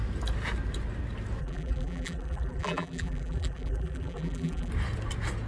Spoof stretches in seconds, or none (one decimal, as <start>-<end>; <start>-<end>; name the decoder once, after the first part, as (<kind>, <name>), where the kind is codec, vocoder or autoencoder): 1.4-4.7 (vocoder, BigVGAN v2)